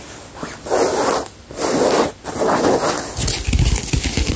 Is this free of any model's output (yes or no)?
yes